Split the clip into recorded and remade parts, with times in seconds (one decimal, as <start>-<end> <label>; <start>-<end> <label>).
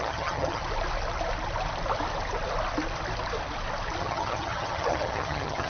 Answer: 0.0-0.6 remade; 0.6-4.0 recorded; 4.0-5.7 remade